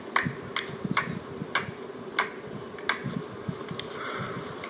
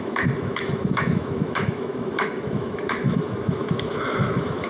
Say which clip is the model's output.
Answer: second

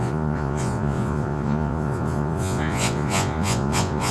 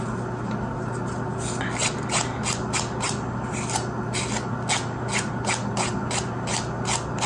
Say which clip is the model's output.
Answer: first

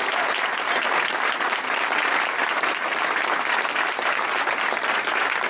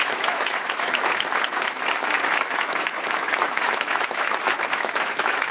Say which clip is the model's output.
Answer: second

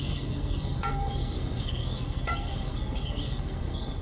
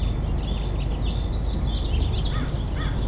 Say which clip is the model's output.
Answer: first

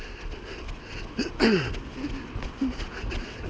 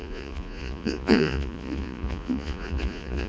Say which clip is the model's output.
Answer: second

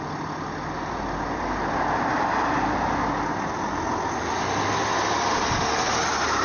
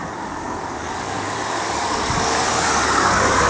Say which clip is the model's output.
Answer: second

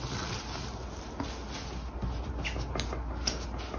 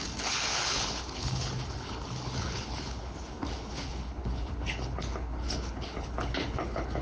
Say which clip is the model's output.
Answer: second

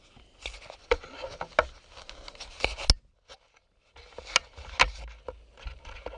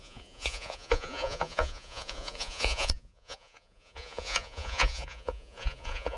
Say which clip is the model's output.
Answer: second